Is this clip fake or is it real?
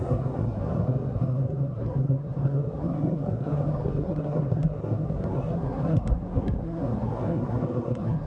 fake